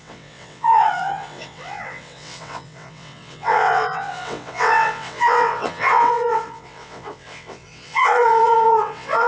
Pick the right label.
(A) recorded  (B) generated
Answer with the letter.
B